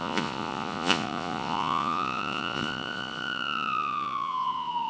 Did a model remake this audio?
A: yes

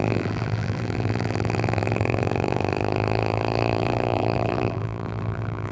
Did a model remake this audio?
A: yes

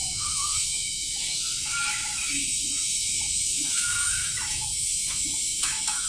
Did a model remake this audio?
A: yes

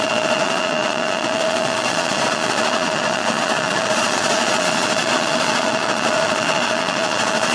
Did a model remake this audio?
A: yes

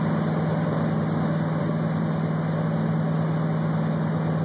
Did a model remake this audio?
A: no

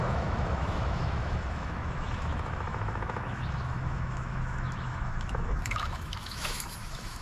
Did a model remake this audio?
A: yes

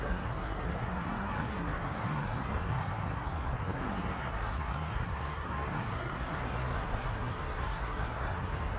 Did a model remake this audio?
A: yes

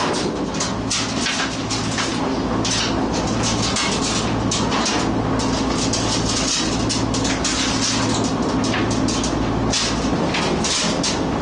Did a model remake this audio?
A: no